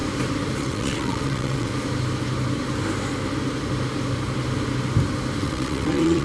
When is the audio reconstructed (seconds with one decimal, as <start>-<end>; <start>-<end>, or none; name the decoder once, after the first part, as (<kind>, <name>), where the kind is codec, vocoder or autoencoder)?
0.6-1.7 (vocoder, WaveNeXt); 5.4-6.2